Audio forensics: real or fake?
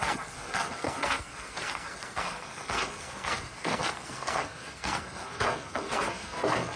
fake